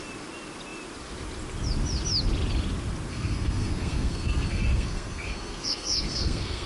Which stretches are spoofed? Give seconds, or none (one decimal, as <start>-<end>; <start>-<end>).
3.1-6.7